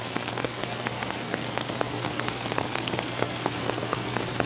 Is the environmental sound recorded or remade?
remade